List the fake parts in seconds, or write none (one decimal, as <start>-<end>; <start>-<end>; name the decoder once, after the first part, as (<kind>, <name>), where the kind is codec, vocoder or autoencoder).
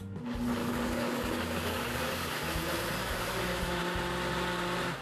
0.6-2.3 (codec, DAC); 3.0-3.8